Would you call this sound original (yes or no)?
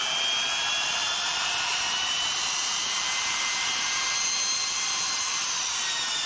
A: no